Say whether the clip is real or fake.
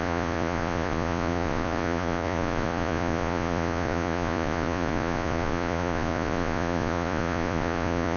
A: fake